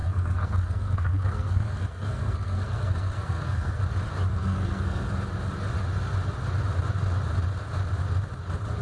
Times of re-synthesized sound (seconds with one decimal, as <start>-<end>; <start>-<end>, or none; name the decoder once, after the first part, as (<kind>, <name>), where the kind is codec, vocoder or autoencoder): 0.0-3.8 (codec, SNAC); 4.3-5.1